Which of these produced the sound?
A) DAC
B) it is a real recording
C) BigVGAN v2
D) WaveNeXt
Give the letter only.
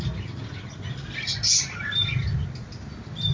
B